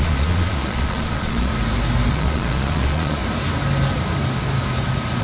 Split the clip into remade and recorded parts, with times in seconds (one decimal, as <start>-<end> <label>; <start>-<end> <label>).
0.0-1.5 remade; 1.5-2.1 recorded; 2.1-3.2 remade; 3.2-5.2 recorded